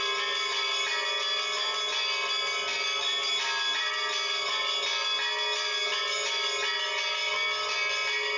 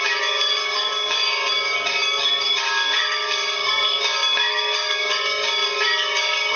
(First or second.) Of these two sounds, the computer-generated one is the second